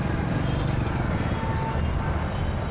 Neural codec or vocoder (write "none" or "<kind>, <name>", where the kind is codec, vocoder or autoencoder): none